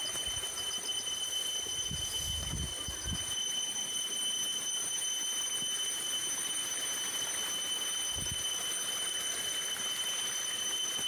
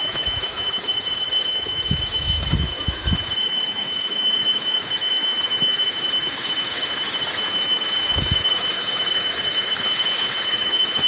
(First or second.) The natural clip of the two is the first